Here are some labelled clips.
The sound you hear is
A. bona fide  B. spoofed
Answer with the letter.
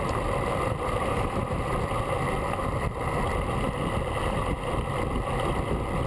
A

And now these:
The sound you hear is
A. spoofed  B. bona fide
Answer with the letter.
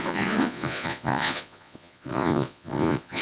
A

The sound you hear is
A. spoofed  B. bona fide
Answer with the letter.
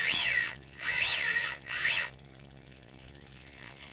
A